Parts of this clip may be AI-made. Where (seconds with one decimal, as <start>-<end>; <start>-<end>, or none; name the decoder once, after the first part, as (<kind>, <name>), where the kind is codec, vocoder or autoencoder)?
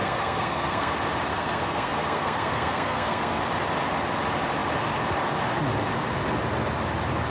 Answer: 0.0-0.9 (codec, SNAC); 1.3-3.4